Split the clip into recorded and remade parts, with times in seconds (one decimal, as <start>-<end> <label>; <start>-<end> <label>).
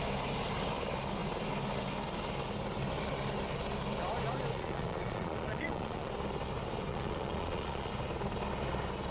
0.0-4.5 recorded; 4.5-6.1 remade; 6.1-6.9 recorded; 6.9-7.9 remade; 7.9-9.1 recorded